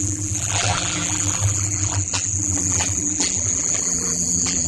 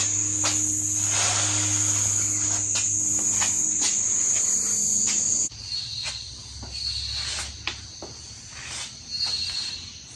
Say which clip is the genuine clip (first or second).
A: second